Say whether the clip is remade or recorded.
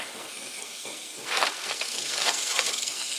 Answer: remade